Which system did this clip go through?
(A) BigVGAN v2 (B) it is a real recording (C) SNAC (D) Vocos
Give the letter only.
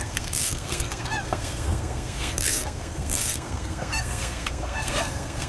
C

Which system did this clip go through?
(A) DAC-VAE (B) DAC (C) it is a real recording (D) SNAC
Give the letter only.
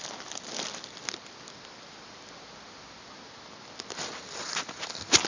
C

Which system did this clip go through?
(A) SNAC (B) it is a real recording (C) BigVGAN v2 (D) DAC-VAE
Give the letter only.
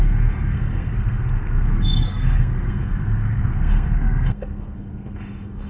A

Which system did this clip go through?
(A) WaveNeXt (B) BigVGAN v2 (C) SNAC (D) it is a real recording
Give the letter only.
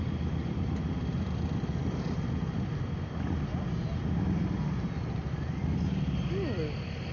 D